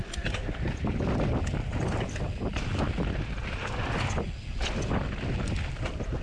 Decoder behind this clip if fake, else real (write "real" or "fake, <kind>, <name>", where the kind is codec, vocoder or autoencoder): real